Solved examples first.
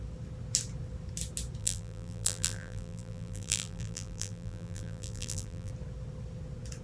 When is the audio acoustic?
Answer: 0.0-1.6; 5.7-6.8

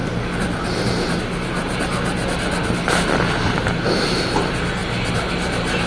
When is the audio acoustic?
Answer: 0.0-2.2; 4.0-4.8

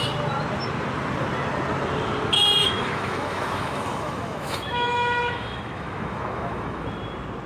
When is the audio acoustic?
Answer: 0.0-2.6; 7.0-7.5

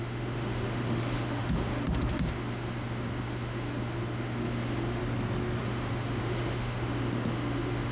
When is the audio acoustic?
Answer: 5.0-5.6

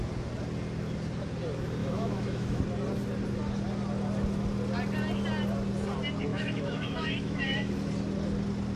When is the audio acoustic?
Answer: 0.0-1.8; 2.6-6.3; 7.7-8.8

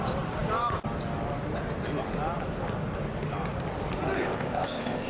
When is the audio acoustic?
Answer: 0.0-4.2

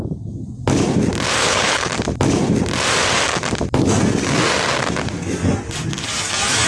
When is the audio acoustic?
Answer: 0.0-1.4; 1.9-6.7